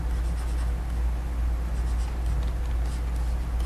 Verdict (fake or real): real